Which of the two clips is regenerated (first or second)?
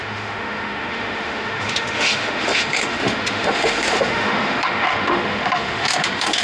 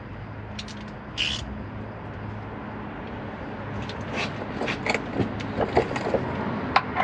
first